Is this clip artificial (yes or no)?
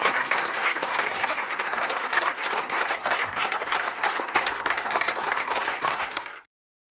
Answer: yes